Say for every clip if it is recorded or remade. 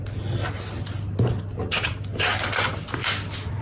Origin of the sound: recorded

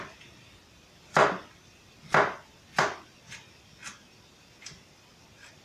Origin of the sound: recorded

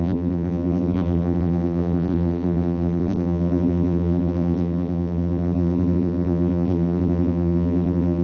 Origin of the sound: remade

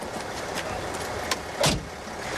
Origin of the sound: recorded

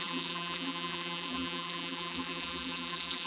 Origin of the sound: remade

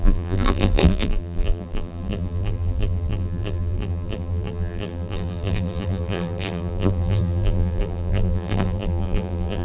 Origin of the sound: remade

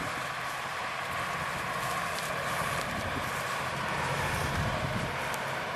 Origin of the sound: remade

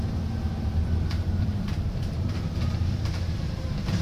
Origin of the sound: remade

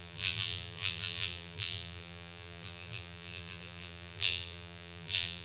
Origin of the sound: remade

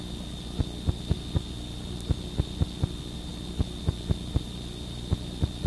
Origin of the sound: recorded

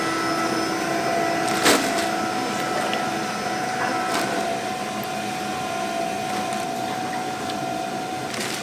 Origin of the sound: recorded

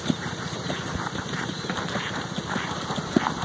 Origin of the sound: remade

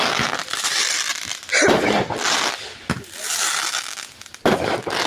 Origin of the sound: recorded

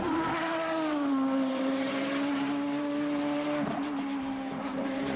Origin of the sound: remade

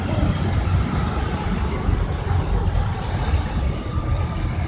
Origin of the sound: remade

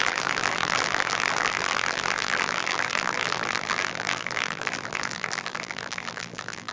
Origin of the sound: remade